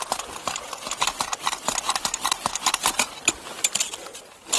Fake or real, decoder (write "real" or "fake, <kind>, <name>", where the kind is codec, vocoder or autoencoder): real